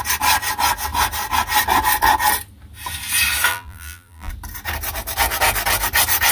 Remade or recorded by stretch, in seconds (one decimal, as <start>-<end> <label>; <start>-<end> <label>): 0.0-3.5 recorded; 3.5-4.3 remade; 4.3-6.3 recorded